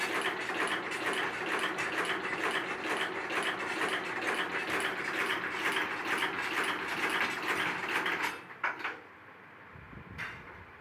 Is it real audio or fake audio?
real